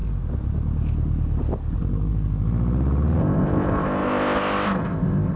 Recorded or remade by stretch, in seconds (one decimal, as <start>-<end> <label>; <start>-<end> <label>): 0.0-3.2 recorded; 3.2-5.4 remade